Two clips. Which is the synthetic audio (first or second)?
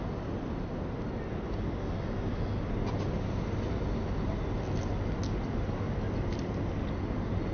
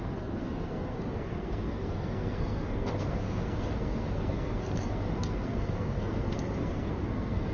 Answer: second